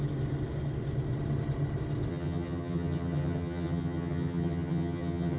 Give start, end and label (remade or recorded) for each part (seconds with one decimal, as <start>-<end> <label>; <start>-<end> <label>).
0.0-2.1 recorded; 2.1-5.4 remade